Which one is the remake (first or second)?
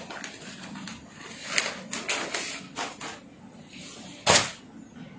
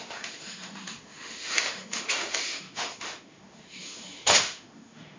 second